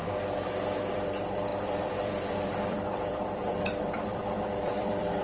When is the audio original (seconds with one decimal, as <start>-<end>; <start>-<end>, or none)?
0.0-0.9